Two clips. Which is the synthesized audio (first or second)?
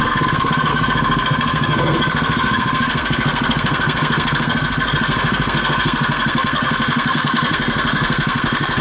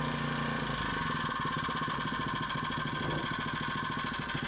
first